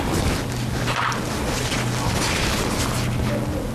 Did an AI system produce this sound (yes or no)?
no